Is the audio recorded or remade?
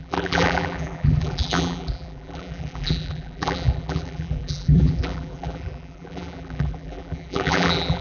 remade